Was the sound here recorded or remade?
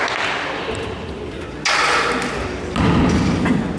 recorded